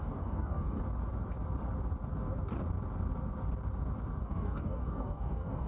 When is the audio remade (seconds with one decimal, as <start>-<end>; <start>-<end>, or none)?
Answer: 0.0-0.8; 4.2-5.7